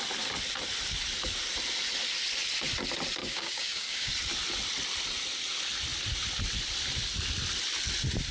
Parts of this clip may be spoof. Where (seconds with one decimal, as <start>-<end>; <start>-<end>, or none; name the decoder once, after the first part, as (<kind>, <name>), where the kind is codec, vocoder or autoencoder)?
3.2-4.1 (codec, DAC)

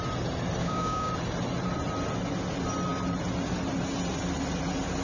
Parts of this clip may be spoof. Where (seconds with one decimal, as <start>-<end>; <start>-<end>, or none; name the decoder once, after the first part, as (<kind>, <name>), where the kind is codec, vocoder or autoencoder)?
0.6-1.1 (codec, DAC)

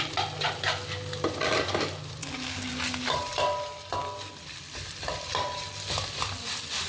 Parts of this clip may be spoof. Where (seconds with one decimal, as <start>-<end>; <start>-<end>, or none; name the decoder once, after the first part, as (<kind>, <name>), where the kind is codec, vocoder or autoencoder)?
2.2-2.7 (codec, DAC)